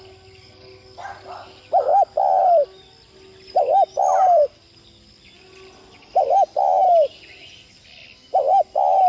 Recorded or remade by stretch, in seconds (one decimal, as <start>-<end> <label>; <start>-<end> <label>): 0.0-9.1 recorded